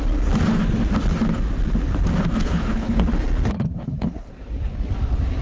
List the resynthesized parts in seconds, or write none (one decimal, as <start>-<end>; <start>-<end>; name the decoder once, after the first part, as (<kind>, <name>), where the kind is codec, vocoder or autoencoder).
2.4-3.0 (codec, HILCodec); 3.8-4.3